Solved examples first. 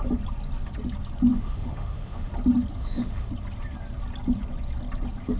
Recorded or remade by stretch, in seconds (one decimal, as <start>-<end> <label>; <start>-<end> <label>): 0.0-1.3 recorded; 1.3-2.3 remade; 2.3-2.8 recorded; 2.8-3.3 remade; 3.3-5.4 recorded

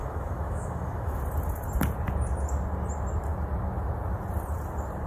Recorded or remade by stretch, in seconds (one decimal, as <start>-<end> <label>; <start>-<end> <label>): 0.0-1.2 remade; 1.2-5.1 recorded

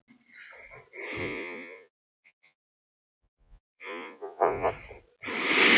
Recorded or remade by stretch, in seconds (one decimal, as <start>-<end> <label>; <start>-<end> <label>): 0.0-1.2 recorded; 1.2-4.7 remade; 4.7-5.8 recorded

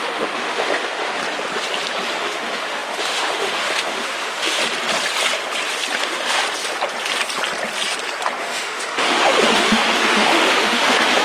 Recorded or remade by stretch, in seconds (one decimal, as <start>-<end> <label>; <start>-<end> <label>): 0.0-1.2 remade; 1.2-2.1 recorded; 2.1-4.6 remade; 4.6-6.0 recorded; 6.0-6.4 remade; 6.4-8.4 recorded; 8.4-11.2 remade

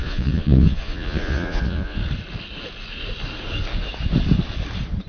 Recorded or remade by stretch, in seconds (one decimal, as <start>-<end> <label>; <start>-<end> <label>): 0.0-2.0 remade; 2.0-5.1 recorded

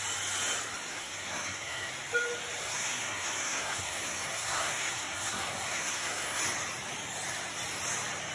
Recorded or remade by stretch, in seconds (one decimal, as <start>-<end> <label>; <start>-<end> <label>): 0.0-0.9 recorded; 0.9-1.9 remade; 1.9-2.6 recorded; 2.6-6.4 remade; 6.4-8.3 recorded

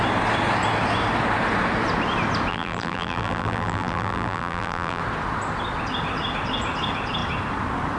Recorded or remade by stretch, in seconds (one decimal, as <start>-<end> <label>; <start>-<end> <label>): 0.0-2.5 recorded; 2.5-5.0 remade; 5.0-8.0 recorded